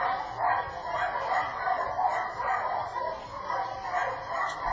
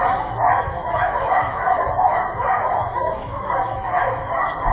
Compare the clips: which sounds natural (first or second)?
first